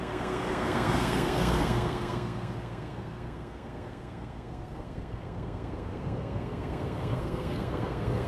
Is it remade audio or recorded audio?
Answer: remade